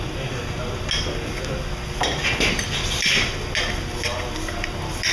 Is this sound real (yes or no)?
yes